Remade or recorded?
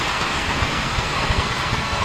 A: remade